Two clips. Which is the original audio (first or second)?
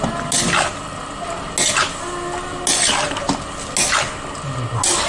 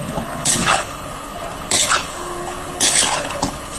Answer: first